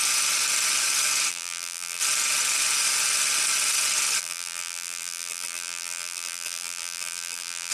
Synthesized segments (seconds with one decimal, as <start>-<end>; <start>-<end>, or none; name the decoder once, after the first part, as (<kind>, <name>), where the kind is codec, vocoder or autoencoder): 1.3-2.0 (vocoder, BigVGAN v2); 4.2-7.7